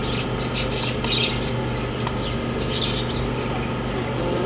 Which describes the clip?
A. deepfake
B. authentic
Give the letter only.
B